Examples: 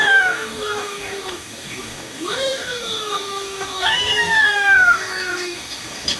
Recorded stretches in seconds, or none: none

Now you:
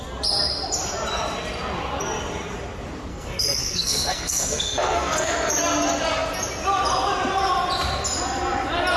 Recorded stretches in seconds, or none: 0.0-3.1; 5.5-9.0

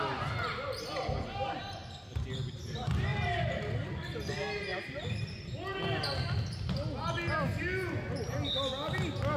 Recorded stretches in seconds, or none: 0.0-3.1; 4.3-4.7; 5.4-9.4

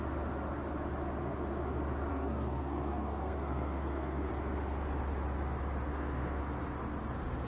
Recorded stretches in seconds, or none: 0.0-2.1; 4.3-5.9; 6.4-7.5

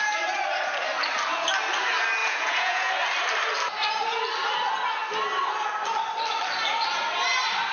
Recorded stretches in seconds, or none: 0.0-2.2; 2.9-7.7

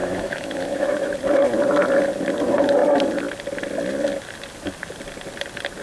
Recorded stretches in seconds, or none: 1.1-5.8

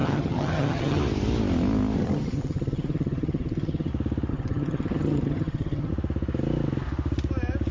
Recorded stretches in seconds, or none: 1.0-2.0; 3.9-4.3; 5.9-7.7